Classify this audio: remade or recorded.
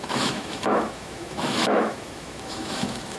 remade